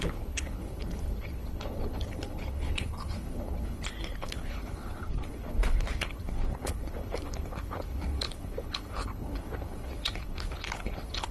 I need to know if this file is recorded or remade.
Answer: remade